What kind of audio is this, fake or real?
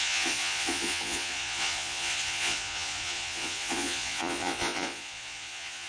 fake